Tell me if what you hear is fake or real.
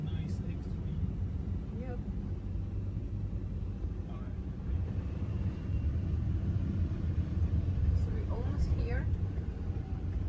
fake